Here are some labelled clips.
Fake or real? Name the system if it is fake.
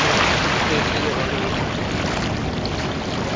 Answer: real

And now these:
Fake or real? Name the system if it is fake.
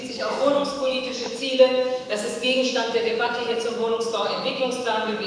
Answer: fake, autoencoder, DAC-VAE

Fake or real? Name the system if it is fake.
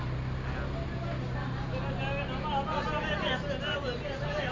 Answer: real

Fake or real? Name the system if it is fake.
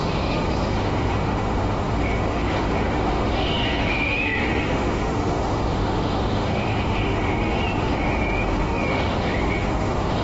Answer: fake, autoencoder, DAC-VAE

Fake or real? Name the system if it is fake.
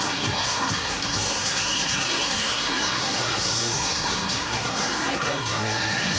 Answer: fake, codec, SNAC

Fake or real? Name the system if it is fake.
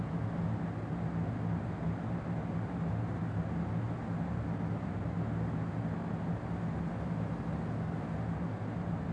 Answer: real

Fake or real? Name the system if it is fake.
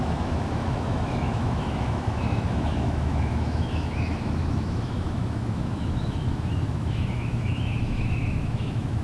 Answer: fake, autoencoder, DAC-VAE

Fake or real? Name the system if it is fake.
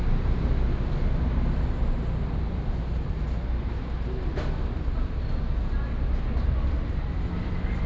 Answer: real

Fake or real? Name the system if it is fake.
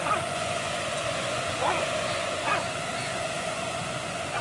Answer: fake, vocoder, Vocos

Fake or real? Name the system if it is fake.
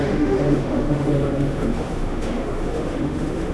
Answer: fake, autoencoder, DAC-VAE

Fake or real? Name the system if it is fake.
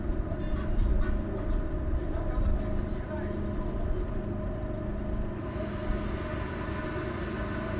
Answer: real